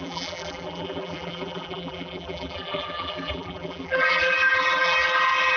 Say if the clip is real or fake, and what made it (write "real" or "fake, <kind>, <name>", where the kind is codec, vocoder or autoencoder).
fake, vocoder, BigVGAN v2